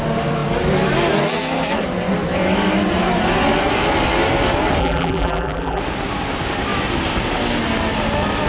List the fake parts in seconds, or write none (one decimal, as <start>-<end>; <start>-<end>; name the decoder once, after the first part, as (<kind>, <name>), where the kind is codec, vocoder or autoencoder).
4.8-5.8 (vocoder, BigVGAN v2)